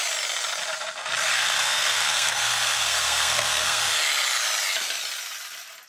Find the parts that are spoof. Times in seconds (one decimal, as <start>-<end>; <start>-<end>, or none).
1.3-3.8